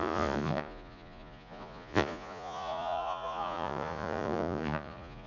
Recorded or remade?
remade